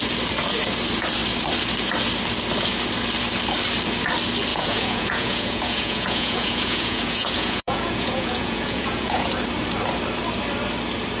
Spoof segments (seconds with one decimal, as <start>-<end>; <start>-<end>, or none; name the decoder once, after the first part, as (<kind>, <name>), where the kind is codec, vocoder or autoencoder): 4.5-9.3 (vocoder, Vocos)